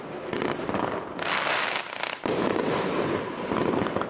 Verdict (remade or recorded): remade